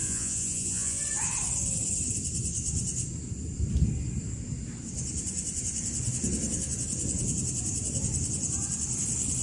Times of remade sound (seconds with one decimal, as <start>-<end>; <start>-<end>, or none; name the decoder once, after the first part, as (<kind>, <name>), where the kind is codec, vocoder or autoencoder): 0.0-1.0 (vocoder, Vocos)